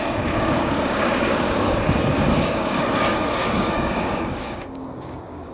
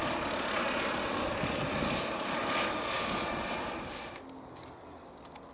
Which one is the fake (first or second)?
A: first